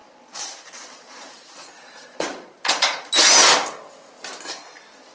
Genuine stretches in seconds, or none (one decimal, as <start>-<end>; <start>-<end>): 3.1-5.1